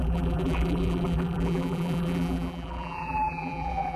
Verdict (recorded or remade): remade